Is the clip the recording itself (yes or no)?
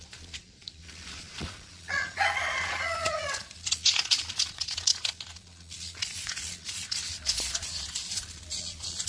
no